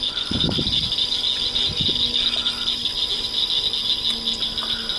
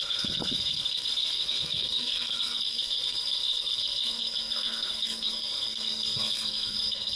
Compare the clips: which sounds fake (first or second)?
second